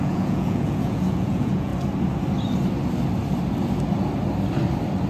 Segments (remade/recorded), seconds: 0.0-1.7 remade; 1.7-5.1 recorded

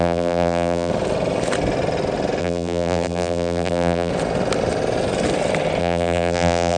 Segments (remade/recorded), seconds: 0.0-0.9 remade; 0.9-2.4 recorded; 2.4-4.1 remade; 4.1-5.8 recorded; 5.8-6.8 remade

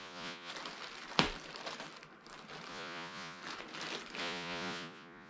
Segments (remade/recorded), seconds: 0.0-0.5 remade; 0.5-2.7 recorded; 2.7-3.4 remade; 3.4-4.2 recorded; 4.2-5.3 remade

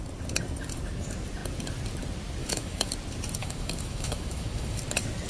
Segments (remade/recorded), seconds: 0.0-2.4 recorded; 2.4-2.9 remade; 2.9-3.4 recorded; 3.4-4.8 remade; 4.8-5.3 recorded